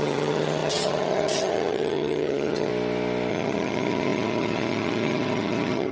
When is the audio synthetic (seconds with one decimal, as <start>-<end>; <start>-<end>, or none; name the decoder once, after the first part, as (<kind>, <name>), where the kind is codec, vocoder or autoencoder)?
0.0-2.7 (vocoder, HiFi-GAN); 3.3-5.9